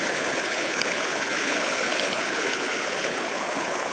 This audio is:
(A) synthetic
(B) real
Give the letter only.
A